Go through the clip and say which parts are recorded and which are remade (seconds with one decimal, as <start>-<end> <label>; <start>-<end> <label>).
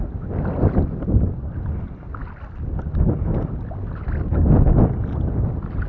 0.0-5.9 recorded